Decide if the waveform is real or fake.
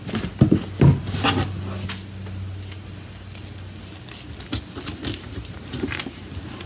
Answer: real